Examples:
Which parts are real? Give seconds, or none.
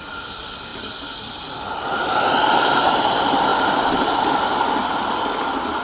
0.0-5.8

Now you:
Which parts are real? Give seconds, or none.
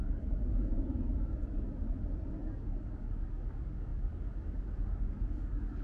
0.7-2.4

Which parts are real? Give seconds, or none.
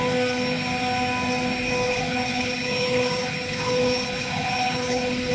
0.0-1.9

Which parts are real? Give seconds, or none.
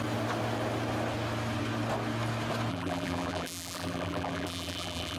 0.0-2.7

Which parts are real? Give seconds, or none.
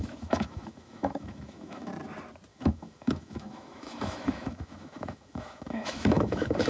1.9-2.5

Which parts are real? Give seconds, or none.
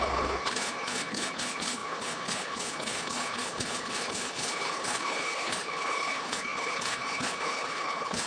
none